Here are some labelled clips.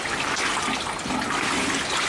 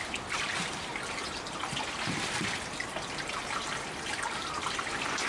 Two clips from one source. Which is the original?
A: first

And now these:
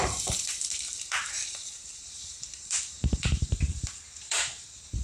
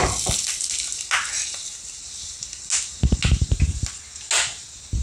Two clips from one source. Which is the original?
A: second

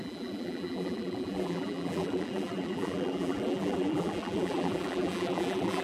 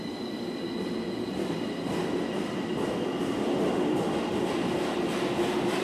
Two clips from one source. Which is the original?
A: second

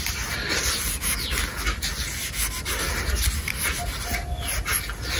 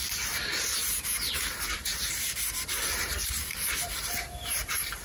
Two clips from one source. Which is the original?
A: first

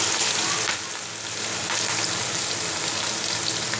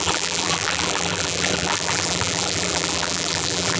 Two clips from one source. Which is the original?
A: first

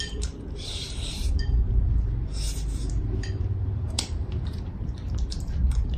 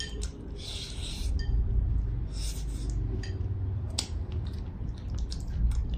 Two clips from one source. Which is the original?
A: second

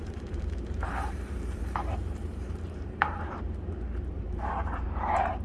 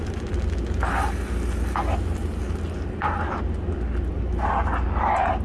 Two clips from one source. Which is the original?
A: second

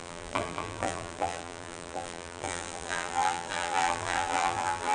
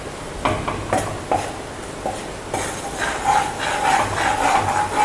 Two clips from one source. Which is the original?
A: second